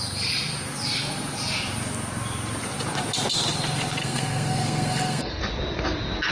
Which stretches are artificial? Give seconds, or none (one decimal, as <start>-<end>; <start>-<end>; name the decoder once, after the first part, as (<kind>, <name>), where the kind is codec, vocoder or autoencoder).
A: 4.0-5.4 (codec, SNAC)